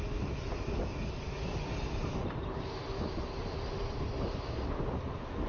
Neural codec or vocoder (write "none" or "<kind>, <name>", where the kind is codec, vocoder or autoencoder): none